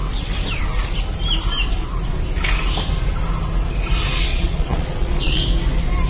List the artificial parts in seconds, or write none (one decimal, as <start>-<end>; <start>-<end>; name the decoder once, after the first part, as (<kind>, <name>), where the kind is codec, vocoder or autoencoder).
4.3-5.4 (vocoder, Vocos)